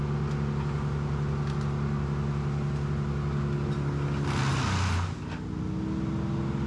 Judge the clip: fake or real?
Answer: real